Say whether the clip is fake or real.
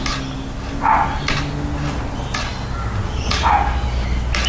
real